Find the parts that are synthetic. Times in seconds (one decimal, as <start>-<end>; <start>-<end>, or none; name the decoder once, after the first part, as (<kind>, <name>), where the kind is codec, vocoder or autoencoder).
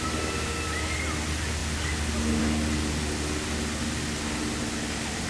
none